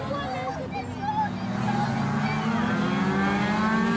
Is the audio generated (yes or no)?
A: no